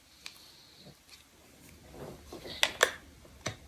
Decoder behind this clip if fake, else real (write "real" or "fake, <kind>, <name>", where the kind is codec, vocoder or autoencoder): real